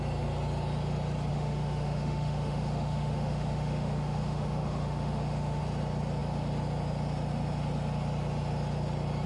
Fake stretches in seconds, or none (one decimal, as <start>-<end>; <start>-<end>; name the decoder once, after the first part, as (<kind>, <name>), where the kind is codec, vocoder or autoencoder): 1.3-5.6 (autoencoder, DAC-VAE)